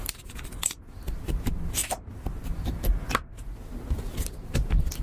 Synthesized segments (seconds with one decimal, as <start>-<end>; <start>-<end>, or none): none